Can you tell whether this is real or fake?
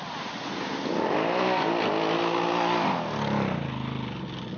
real